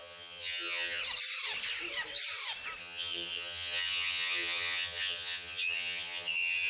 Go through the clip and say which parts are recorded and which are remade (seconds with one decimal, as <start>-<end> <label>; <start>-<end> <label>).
0.0-1.0 remade; 1.0-2.8 recorded; 2.8-6.7 remade